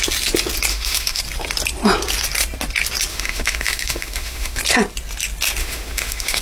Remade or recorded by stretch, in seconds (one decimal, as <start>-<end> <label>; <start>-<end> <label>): 0.0-0.7 recorded; 0.7-1.2 remade; 1.2-3.1 recorded; 3.1-4.6 remade; 4.6-5.6 recorded; 5.6-6.4 remade